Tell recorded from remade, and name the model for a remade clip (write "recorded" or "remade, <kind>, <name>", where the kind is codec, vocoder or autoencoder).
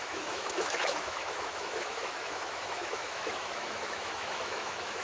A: remade, autoencoder, DAC-VAE